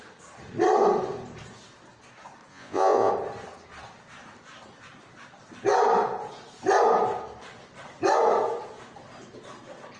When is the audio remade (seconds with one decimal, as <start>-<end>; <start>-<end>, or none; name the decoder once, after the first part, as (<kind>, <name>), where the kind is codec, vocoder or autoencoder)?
2.5-3.1 (vocoder, Vocos)